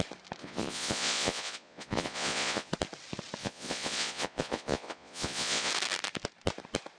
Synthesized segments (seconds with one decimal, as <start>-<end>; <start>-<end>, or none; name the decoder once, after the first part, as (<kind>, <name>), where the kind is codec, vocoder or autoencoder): 0.4-2.7 (vocoder, Vocos); 3.4-5.7